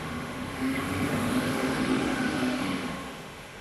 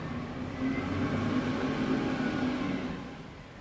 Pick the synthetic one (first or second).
first